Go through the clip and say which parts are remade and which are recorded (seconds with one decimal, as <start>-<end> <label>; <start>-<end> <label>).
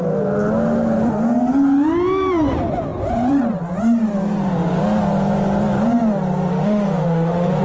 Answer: 0.0-6.5 recorded; 6.5-7.6 remade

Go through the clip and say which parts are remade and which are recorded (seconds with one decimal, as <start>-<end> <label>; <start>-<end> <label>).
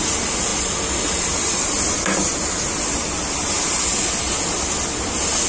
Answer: 0.0-5.5 recorded